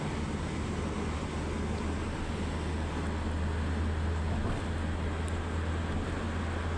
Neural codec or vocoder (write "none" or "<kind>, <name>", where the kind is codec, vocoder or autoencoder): none